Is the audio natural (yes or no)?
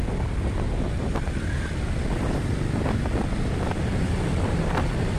yes